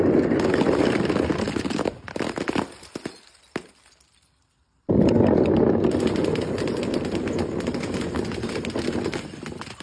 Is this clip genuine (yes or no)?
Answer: yes